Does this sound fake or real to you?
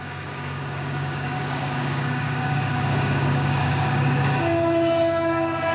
fake